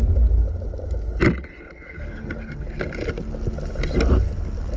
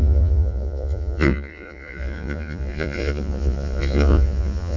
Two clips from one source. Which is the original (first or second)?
first